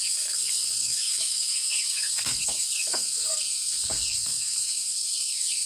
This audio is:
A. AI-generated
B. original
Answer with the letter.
A